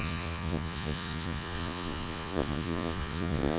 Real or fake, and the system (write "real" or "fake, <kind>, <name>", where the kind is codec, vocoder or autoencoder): fake, vocoder, Vocos